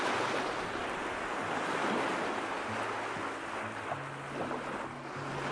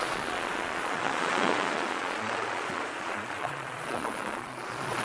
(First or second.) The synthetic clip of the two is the second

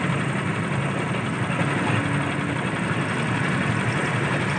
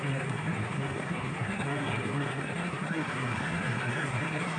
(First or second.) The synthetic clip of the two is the second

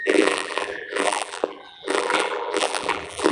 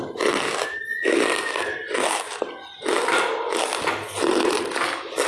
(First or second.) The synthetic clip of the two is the first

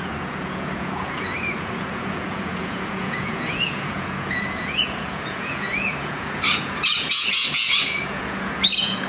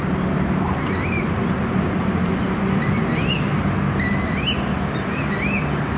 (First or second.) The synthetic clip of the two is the first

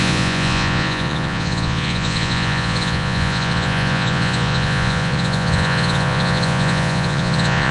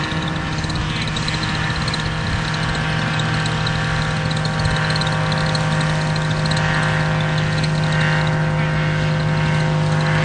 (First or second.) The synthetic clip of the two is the first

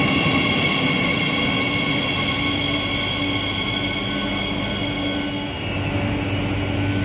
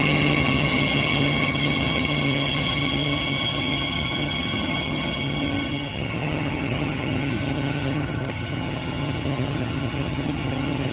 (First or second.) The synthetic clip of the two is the second